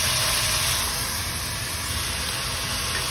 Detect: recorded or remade recorded